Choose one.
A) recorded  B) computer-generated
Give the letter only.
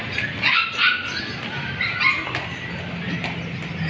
A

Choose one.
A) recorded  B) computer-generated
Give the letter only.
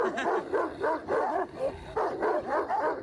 A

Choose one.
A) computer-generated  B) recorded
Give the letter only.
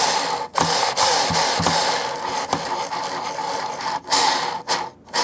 B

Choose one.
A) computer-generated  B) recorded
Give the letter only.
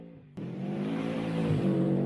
A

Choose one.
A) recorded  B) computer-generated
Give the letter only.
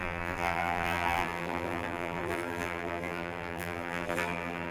B